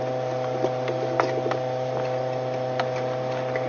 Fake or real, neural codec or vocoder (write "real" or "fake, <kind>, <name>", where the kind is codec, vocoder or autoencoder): real